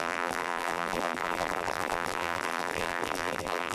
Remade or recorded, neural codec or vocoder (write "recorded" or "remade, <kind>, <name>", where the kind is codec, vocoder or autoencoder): remade, vocoder, BigVGAN v2